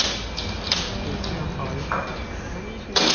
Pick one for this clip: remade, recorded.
recorded